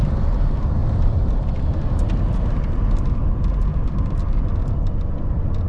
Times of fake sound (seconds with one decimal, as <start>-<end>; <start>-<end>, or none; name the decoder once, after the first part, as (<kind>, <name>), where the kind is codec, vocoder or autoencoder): 0.8-1.6 (vocoder, BigVGAN v2); 3.7-4.3